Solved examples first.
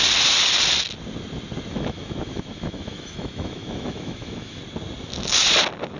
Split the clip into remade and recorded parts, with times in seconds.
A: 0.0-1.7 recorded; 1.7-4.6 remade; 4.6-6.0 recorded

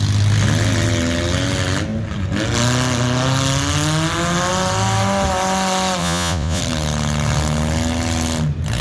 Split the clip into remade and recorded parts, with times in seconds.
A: 0.0-6.0 recorded; 6.0-6.6 remade; 6.6-8.8 recorded

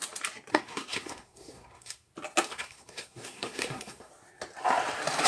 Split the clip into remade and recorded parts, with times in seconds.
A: 0.0-0.5 recorded; 0.5-2.1 remade; 2.1-2.5 recorded; 2.5-4.1 remade; 4.1-5.3 recorded

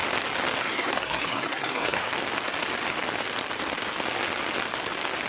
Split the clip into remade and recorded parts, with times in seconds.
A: 0.0-0.6 recorded; 0.6-2.1 remade; 2.1-5.3 recorded

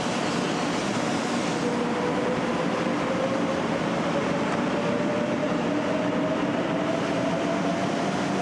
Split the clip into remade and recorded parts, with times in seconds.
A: 0.0-5.4 recorded; 5.4-6.0 remade; 6.0-6.5 recorded; 6.5-7.1 remade; 7.1-8.4 recorded

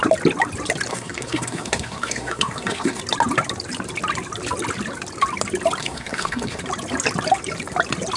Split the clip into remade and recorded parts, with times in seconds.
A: 0.0-0.9 recorded; 0.9-3.0 remade; 3.0-5.8 recorded; 5.8-6.6 remade; 6.6-8.2 recorded